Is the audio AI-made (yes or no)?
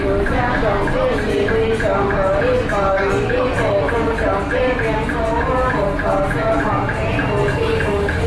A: no